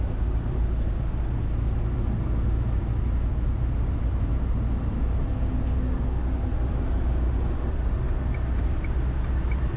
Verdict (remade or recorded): recorded